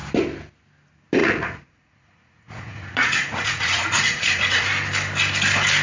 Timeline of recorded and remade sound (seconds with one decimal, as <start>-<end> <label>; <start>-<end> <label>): 0.0-1.2 recorded; 1.2-4.7 remade; 4.7-5.8 recorded